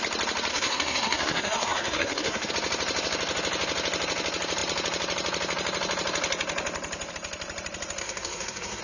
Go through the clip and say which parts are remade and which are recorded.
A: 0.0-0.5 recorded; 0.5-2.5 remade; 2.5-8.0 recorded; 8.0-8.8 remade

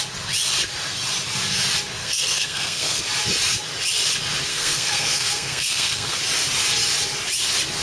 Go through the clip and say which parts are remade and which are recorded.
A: 0.0-2.0 recorded; 2.0-3.0 remade; 3.0-4.5 recorded; 4.5-6.2 remade; 6.2-7.8 recorded

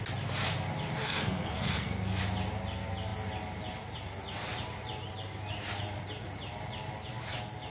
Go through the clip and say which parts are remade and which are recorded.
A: 0.0-1.0 recorded; 1.0-2.2 remade; 2.2-7.7 recorded